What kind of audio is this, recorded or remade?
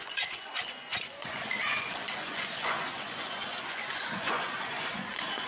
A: remade